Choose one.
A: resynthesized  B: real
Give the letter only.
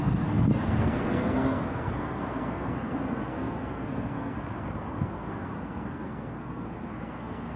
A